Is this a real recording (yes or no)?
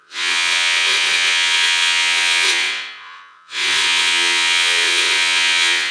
no